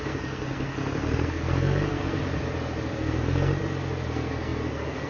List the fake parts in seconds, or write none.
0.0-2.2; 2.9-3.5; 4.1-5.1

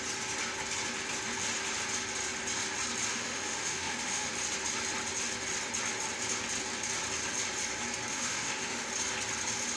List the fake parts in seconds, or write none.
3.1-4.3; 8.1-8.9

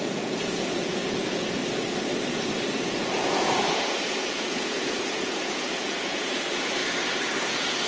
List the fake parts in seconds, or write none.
0.0-1.6; 2.8-6.8; 7.4-7.9

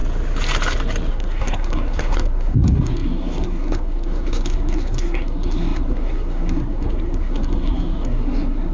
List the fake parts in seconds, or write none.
1.1-8.7